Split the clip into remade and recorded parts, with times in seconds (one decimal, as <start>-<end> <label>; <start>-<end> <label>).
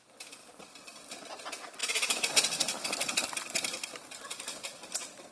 0.0-0.4 recorded; 0.4-1.0 remade; 1.0-1.8 recorded; 1.8-5.3 remade